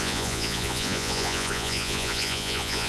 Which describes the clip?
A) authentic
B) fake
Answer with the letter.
B